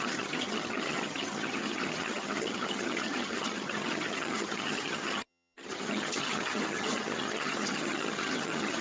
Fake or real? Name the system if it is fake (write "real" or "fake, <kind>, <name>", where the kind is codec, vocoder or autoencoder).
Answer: fake, vocoder, HiFi-GAN